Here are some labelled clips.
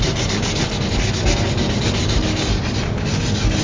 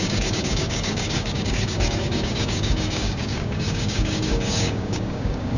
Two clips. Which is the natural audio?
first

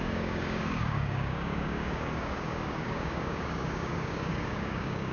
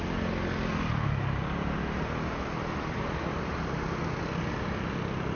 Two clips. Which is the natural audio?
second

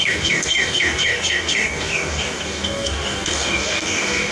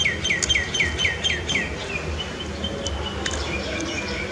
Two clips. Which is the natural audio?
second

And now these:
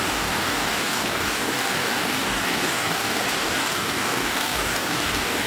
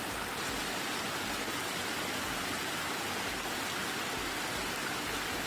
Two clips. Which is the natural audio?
second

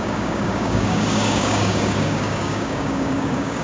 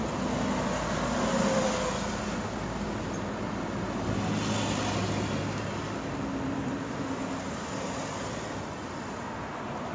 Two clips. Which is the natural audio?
second